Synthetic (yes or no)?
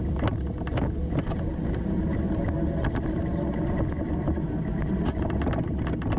no